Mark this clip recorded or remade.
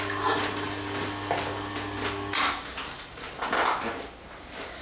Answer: recorded